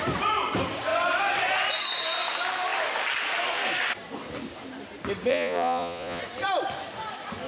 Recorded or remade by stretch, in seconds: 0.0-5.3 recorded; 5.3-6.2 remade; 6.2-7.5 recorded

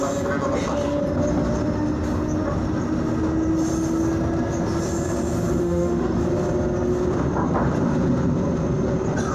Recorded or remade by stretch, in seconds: 0.0-5.6 recorded; 5.6-6.2 remade; 6.2-9.3 recorded

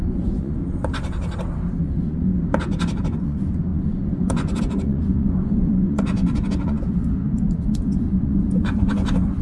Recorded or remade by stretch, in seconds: 0.0-0.6 remade; 0.6-1.8 recorded; 1.8-2.3 remade; 2.3-3.2 recorded; 3.2-9.4 remade

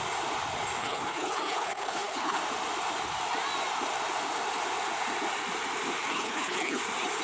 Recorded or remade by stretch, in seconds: 0.0-0.8 recorded; 0.8-2.4 remade; 2.4-6.0 recorded; 6.0-6.8 remade; 6.8-7.2 recorded

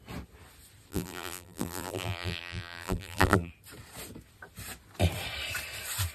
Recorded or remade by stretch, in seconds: 0.0-0.9 recorded; 0.9-3.5 remade; 3.5-6.1 recorded

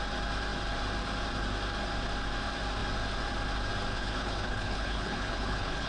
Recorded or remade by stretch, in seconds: 0.0-3.9 recorded; 3.9-5.9 remade

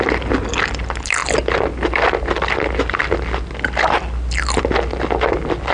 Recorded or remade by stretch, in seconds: 0.0-5.7 recorded